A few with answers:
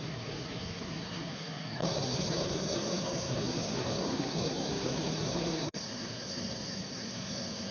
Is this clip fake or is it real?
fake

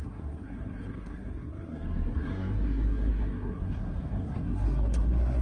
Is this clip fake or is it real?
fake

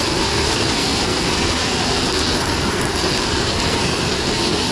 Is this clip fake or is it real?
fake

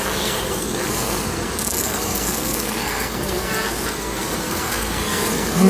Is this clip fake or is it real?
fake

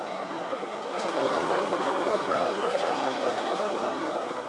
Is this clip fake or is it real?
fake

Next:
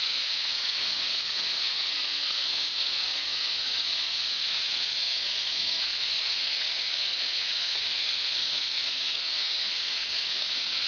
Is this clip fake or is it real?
fake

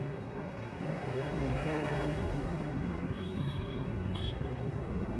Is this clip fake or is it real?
fake